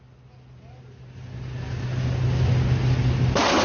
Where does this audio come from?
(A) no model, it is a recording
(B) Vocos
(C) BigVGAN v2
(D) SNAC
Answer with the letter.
A